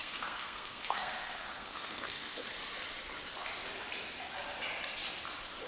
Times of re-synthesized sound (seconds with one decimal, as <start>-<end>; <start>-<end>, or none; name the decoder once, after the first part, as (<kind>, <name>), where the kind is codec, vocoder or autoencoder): 0.0-2.5 (codec, SNAC)

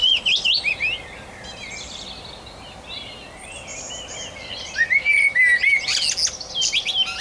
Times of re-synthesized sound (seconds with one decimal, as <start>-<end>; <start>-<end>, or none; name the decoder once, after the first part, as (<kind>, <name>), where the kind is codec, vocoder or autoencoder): none

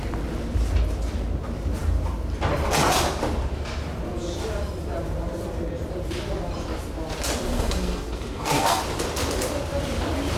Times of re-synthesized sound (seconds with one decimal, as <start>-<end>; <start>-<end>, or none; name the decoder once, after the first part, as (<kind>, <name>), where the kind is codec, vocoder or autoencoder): 7.5-8.8 (codec, SNAC)

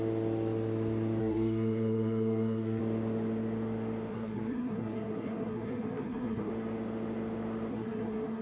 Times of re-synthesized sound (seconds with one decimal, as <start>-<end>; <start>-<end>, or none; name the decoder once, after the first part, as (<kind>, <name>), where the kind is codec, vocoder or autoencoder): 1.2-2.8 (codec, SNAC); 4.1-6.5; 7.7-8.4

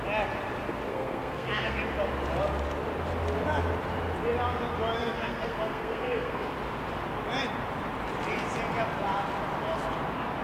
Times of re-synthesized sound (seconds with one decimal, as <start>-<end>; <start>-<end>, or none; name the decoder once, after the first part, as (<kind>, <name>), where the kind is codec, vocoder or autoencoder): 0.9-1.8 (codec, SNAC); 5.0-6.5

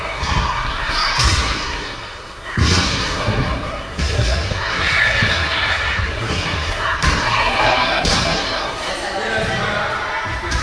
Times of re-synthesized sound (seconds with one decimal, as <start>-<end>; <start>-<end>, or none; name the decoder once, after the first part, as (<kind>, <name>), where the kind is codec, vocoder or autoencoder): 0.0-8.9 (codec, SNAC)

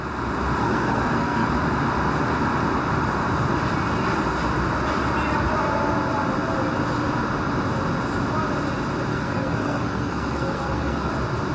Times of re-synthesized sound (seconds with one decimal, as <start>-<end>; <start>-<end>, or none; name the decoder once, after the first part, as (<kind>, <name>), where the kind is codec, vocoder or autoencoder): 0.6-1.5 (codec, SNAC); 9.1-11.1